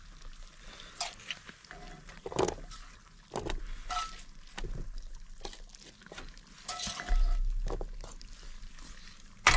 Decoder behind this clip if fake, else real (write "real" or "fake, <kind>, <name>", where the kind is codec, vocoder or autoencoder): real